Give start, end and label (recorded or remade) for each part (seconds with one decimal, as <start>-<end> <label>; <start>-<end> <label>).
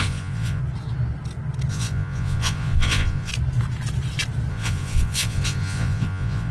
0.0-0.6 remade; 0.6-1.7 recorded; 1.7-3.3 remade; 3.3-4.5 recorded; 4.5-6.5 remade